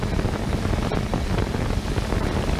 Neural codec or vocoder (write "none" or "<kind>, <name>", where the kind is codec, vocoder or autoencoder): none